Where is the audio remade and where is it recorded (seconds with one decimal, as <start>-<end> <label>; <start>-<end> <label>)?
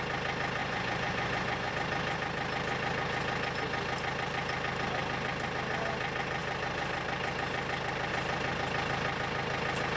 0.0-0.6 recorded; 0.6-1.7 remade; 1.7-10.0 recorded